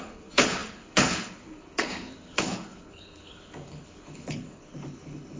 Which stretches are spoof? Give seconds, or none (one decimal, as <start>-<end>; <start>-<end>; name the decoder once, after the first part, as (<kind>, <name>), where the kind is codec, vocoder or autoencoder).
0.0-5.4 (codec, HILCodec)